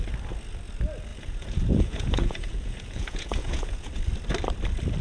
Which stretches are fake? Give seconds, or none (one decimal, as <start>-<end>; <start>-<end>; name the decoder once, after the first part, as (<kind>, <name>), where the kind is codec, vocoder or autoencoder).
1.1-3.9 (vocoder, Vocos)